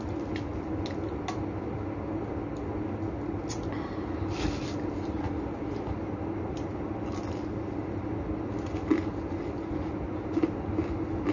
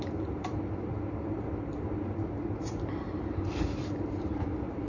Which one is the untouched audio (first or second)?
first